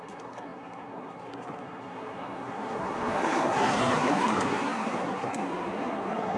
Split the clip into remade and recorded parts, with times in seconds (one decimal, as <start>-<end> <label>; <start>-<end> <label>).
0.0-6.4 remade

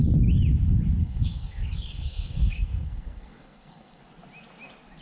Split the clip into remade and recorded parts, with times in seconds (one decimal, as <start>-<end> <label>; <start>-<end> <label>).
0.0-1.0 recorded; 1.0-4.0 remade; 4.0-5.0 recorded

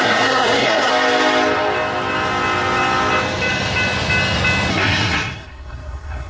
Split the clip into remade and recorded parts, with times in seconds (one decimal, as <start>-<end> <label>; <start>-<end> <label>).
0.0-0.9 remade; 0.9-4.7 recorded; 4.7-6.3 remade

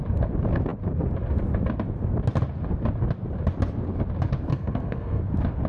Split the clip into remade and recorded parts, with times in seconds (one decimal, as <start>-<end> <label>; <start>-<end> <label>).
0.0-4.5 recorded; 4.5-5.2 remade; 5.2-5.7 recorded